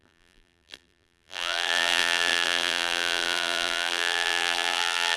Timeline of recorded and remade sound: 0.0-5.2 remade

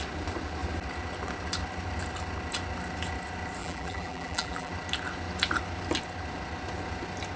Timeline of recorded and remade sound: 0.0-3.6 recorded; 3.6-4.7 remade; 4.7-7.4 recorded

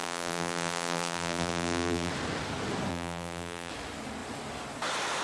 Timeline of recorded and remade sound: 0.0-2.1 remade; 2.1-2.9 recorded; 2.9-3.7 remade; 3.7-5.2 recorded

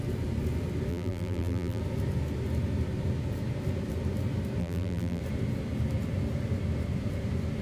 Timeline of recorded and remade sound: 0.0-0.9 recorded; 0.9-1.8 remade; 1.8-4.6 recorded; 4.6-5.2 remade; 5.2-7.6 recorded

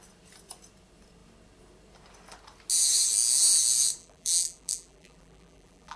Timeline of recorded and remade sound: 0.0-4.0 recorded; 4.0-6.0 remade